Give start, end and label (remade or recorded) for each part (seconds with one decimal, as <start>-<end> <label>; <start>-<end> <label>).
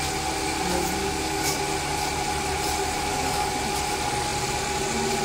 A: 0.0-1.0 recorded; 1.0-1.6 remade; 1.6-3.1 recorded; 3.1-3.6 remade; 3.6-5.2 recorded